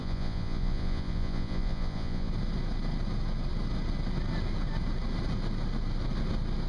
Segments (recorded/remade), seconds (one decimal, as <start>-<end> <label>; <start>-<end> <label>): 0.0-2.3 remade; 2.3-6.7 recorded